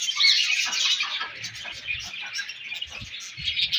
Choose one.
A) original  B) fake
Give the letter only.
A